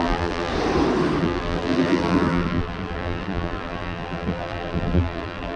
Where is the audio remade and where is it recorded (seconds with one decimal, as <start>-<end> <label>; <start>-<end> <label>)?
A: 0.0-0.5 remade; 0.5-1.2 recorded; 1.2-5.6 remade

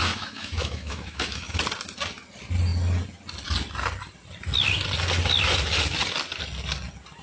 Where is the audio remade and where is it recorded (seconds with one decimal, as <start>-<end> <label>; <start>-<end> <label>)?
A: 0.0-1.6 remade; 1.6-7.2 recorded

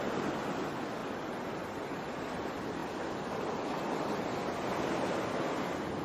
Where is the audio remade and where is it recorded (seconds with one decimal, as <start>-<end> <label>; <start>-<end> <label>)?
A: 0.0-2.8 recorded; 2.8-4.2 remade; 4.2-6.0 recorded

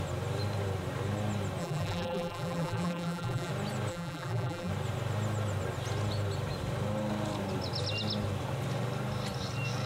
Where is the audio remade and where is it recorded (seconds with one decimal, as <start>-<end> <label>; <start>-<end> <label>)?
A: 0.0-1.6 recorded; 1.6-3.5 remade; 3.5-3.9 recorded; 3.9-4.7 remade; 4.7-9.9 recorded

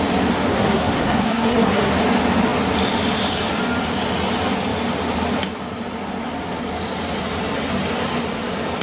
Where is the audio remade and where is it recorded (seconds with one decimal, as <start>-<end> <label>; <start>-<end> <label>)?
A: 0.0-0.5 recorded; 0.5-1.9 remade; 1.9-8.8 recorded

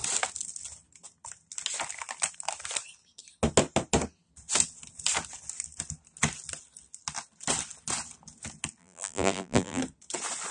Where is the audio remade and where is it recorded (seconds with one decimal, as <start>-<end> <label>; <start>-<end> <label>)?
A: 0.0-8.8 recorded; 8.8-9.8 remade; 9.8-10.5 recorded

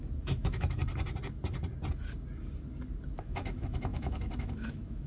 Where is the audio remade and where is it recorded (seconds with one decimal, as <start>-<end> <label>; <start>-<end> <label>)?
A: 0.0-0.8 remade; 0.8-3.1 recorded; 3.1-5.1 remade